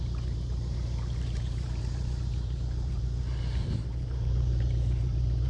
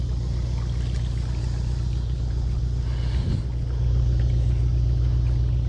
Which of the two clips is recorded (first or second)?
second